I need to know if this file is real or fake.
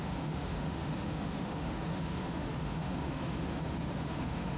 fake